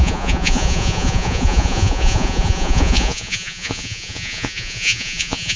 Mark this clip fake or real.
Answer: fake